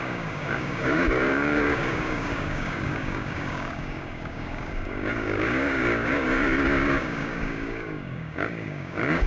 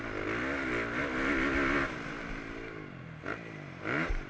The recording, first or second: second